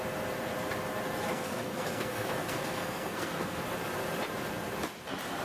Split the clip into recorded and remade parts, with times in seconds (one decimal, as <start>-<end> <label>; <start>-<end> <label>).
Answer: 0.0-1.3 recorded; 1.3-3.6 remade; 3.6-5.4 recorded